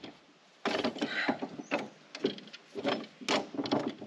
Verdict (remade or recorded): recorded